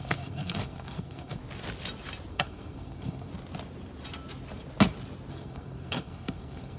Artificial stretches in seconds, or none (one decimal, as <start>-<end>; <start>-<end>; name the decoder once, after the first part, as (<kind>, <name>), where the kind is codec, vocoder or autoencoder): 0.0-1.4 (codec, SNAC); 2.3-3.3; 5.3-6.8